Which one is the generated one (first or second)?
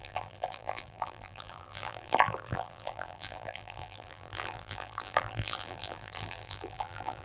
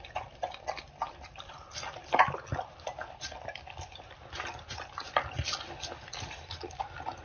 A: first